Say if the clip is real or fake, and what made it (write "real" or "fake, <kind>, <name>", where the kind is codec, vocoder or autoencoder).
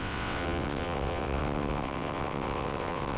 fake, vocoder, WaveNeXt